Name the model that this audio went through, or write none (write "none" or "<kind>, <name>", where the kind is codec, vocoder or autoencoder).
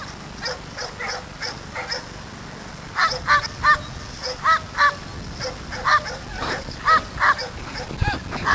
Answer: none